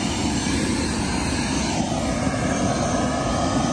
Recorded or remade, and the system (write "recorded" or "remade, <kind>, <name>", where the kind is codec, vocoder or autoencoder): recorded